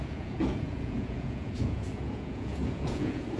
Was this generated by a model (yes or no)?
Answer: yes